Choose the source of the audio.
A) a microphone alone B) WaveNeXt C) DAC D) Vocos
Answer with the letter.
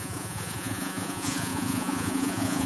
D